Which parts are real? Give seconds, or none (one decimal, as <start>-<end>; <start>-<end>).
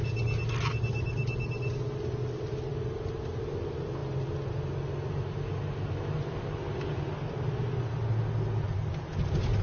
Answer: 0.0-9.6